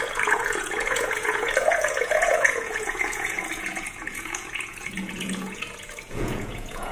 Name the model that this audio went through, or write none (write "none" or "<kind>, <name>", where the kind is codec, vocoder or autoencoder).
vocoder, Vocos